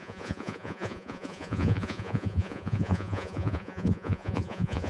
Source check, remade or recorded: remade